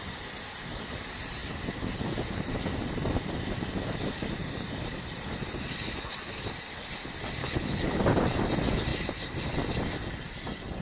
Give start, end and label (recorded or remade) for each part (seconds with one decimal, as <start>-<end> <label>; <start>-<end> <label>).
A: 0.0-7.4 recorded; 7.4-8.0 remade; 8.0-10.8 recorded